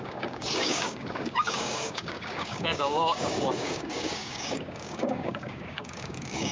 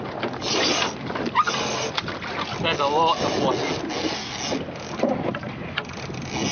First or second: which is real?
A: second